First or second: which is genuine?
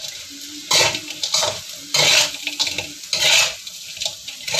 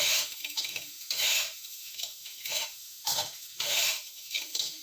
first